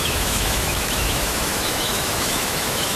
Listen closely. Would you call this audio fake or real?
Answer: fake